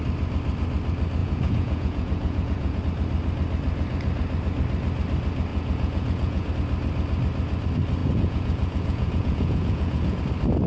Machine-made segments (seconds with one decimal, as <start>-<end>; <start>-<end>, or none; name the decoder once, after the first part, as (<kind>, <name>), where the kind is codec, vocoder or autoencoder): 1.2-2.8 (vocoder, Vocos); 5.5-6.5; 8.0-10.2